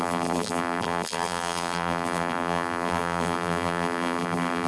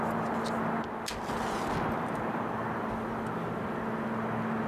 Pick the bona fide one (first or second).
second